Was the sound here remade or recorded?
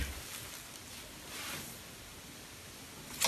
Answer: recorded